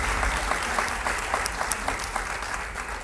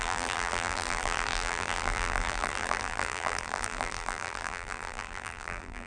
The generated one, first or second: second